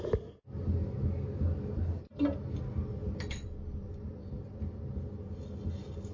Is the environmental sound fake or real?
real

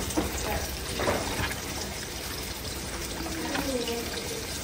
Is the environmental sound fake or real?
fake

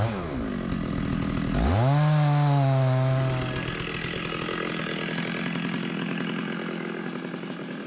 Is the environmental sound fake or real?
real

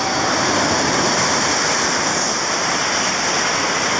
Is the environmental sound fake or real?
fake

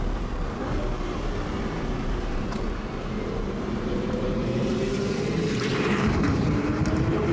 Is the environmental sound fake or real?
fake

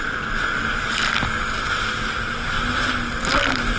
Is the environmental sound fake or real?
real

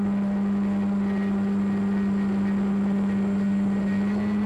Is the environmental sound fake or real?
real